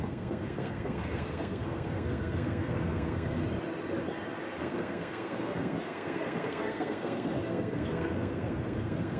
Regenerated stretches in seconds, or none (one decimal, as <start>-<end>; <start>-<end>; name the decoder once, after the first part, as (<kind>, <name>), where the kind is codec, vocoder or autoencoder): 0.0-3.4 (codec, SNAC); 4.6-9.2